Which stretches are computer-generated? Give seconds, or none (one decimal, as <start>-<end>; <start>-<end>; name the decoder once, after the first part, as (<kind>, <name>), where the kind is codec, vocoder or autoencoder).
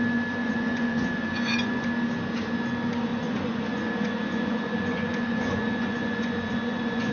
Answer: 0.4-1.8 (vocoder, Vocos); 3.1-7.1